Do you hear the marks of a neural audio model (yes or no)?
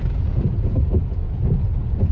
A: yes